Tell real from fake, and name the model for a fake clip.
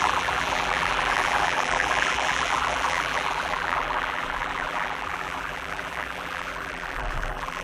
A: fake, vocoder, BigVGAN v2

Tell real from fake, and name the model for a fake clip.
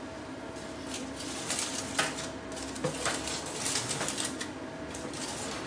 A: real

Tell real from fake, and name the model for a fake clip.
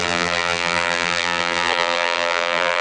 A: fake, vocoder, BigVGAN v2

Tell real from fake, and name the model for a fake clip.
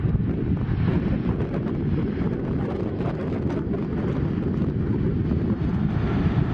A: real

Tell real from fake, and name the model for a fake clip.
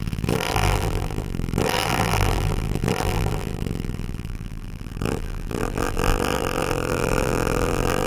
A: fake, vocoder, BigVGAN v2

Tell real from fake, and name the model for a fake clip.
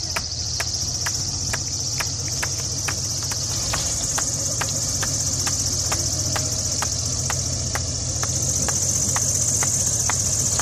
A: real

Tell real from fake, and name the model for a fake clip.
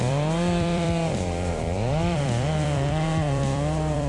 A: fake, vocoder, BigVGAN v2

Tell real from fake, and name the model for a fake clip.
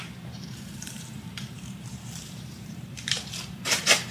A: fake, vocoder, BigVGAN v2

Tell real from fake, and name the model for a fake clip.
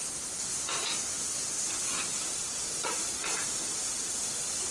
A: real